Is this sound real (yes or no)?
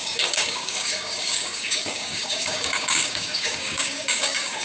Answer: no